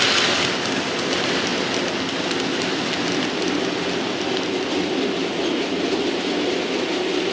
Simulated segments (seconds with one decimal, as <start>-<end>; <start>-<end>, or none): none